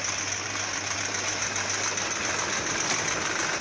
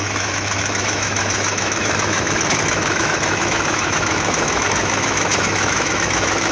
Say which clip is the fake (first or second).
second